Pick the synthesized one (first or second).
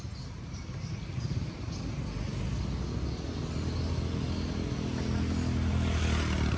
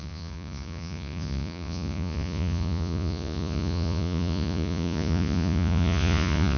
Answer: second